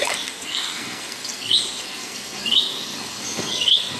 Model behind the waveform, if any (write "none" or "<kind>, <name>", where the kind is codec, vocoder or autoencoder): codec, SNAC